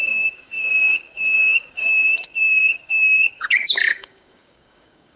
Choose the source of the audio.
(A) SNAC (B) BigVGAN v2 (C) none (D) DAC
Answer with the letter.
D